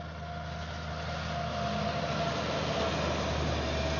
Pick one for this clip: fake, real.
real